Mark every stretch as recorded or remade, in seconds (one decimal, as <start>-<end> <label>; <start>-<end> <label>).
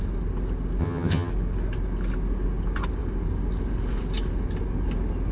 0.0-0.8 recorded; 0.8-1.3 remade; 1.3-5.3 recorded